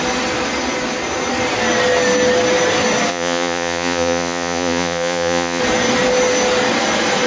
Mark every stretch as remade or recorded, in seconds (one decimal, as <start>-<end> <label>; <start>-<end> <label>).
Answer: 0.0-3.1 recorded; 3.1-5.6 remade; 5.6-7.3 recorded